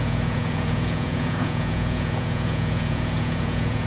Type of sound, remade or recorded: remade